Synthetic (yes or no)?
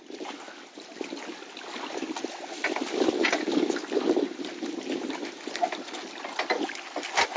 no